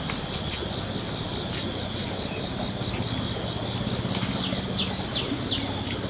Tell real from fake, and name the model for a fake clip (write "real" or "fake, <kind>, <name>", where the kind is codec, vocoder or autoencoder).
real